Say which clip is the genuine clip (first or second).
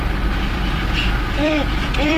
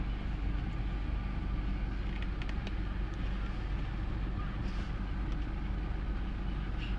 second